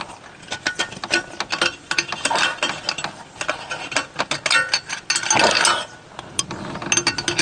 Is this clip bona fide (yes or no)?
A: yes